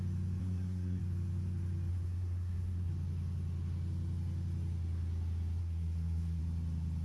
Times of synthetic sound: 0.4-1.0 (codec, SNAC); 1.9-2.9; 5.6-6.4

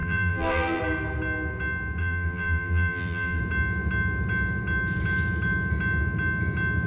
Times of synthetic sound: 0.0-0.8 (vocoder, BigVGAN v2); 2.0-3.4

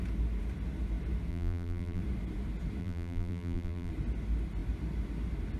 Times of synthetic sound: 1.3-2.0 (vocoder, BigVGAN v2); 2.8-3.9

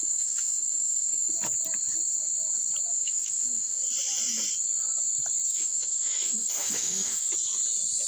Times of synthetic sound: 0.0-1.3 (autoencoder, DAC-VAE); 2.9-3.8; 5.5-7.3